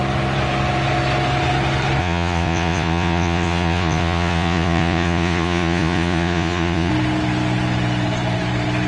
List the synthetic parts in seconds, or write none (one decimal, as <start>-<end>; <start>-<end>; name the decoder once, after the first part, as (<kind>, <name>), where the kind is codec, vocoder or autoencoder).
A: 2.0-6.9 (vocoder, Vocos)